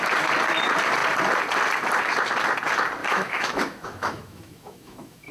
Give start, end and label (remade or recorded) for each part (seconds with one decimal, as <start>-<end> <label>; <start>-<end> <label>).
0.0-3.0 recorded; 3.0-5.3 remade